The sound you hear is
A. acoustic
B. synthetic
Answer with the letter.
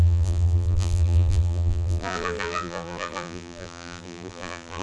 B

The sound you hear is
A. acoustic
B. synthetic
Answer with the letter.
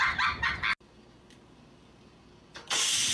A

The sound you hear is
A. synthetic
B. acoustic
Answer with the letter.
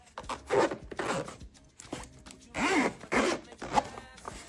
B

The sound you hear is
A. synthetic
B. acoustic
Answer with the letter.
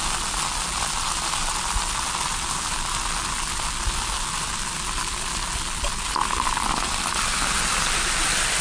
B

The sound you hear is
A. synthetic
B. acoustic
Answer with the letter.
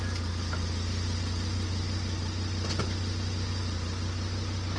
B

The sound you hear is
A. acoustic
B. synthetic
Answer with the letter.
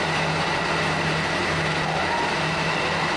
A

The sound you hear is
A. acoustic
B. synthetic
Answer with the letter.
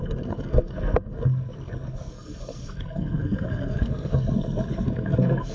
B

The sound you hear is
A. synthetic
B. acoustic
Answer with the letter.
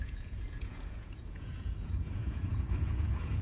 A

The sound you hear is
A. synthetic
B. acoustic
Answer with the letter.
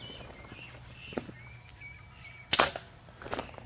B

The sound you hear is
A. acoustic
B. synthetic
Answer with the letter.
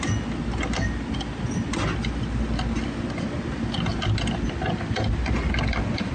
A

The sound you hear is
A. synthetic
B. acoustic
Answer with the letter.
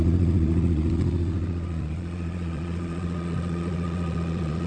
A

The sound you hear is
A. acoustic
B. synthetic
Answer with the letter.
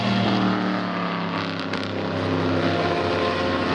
A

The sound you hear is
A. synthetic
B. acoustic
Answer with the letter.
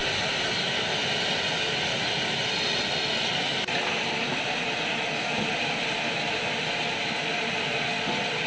B